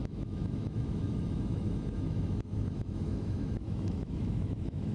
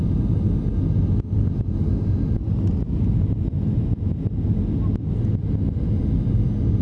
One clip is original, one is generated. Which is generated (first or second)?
first